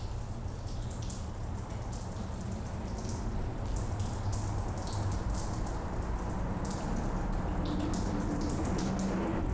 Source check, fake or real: real